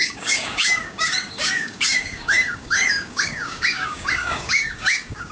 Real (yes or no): no